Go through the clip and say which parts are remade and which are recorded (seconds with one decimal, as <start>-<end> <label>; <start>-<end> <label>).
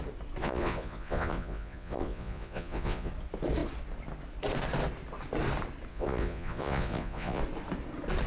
0.0-0.4 recorded; 0.4-3.1 remade; 3.1-5.9 recorded; 5.9-7.4 remade; 7.4-8.3 recorded